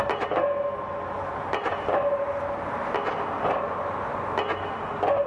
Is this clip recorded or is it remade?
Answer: recorded